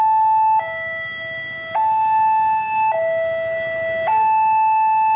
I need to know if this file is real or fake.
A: real